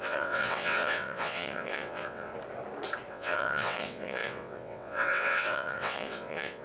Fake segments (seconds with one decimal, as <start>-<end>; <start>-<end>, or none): 0.0-2.3; 3.1-6.6